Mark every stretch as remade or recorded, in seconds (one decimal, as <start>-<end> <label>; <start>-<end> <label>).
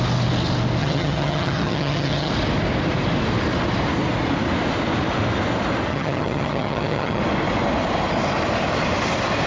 0.0-0.8 recorded; 0.8-2.3 remade; 2.3-5.9 recorded; 5.9-7.2 remade; 7.2-9.5 recorded